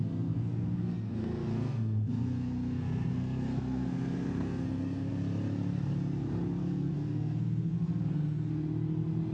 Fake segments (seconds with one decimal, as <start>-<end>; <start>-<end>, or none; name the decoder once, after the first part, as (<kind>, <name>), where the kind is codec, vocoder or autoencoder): 0.0-5.1 (codec, SNAC); 6.6-8.5